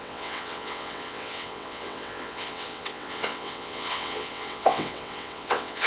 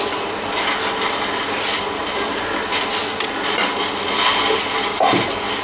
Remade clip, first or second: first